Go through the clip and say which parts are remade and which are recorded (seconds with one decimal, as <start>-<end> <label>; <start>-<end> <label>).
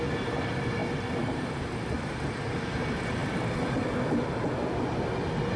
0.0-5.6 recorded